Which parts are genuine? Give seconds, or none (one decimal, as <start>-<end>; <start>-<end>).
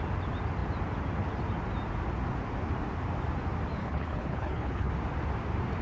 0.0-3.8; 4.9-5.8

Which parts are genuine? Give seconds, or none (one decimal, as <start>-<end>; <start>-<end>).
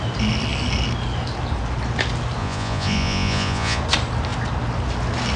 0.0-2.4; 3.8-5.4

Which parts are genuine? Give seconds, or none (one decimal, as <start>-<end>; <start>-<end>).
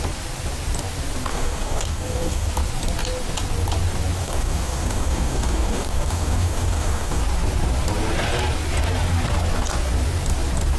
0.0-1.3; 2.5-4.2; 7.2-10.8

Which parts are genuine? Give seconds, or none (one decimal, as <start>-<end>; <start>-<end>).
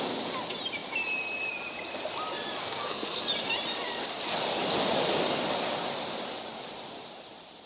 0.0-2.6; 3.2-7.7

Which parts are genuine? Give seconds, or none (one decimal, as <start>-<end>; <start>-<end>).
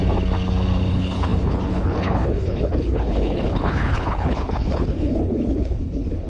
0.0-0.9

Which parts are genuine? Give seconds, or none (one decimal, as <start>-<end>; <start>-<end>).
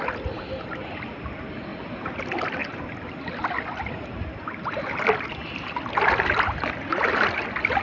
0.0-7.8